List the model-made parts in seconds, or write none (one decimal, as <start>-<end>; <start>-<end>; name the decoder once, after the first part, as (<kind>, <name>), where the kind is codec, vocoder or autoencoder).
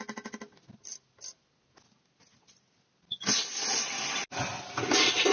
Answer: none